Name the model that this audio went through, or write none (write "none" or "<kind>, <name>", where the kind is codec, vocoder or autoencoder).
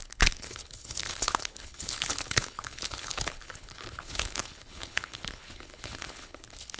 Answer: codec, HILCodec